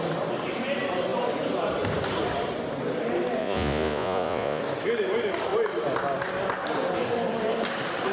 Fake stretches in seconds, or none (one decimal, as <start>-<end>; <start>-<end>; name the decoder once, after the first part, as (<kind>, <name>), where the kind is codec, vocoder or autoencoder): 3.4-4.6 (vocoder, Vocos)